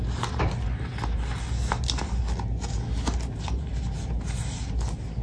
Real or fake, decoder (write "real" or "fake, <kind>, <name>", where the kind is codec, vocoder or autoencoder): real